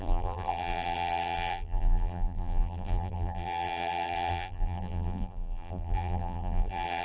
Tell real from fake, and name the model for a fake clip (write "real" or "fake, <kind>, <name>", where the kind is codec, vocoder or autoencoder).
fake, vocoder, BigVGAN v2